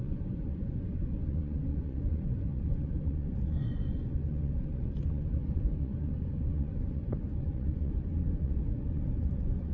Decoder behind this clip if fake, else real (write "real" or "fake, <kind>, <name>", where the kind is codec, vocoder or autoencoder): fake, vocoder, Vocos